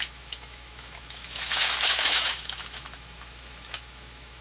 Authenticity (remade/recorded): remade